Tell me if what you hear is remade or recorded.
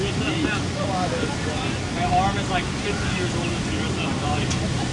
recorded